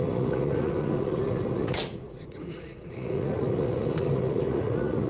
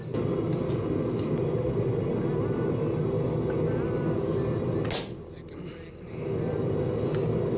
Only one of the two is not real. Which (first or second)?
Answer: first